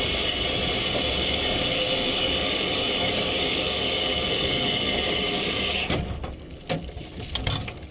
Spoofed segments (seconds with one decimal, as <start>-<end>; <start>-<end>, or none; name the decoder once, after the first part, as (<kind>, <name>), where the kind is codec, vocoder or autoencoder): 1.2-5.9 (codec, DAC)